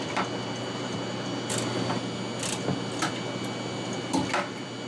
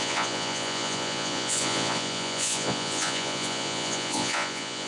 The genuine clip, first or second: first